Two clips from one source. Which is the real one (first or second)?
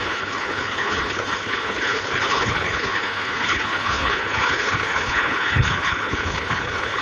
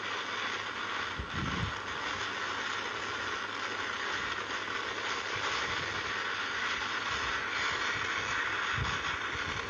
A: second